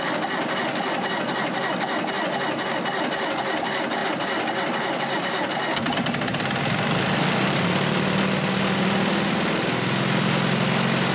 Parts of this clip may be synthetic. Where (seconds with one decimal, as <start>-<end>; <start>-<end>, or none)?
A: none